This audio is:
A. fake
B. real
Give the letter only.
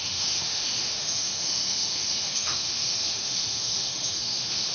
A